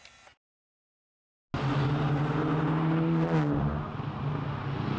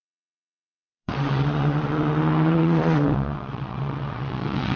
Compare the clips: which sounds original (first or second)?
first